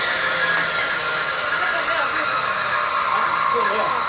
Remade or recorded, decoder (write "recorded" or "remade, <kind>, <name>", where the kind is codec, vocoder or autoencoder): recorded